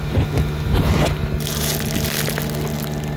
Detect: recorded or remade recorded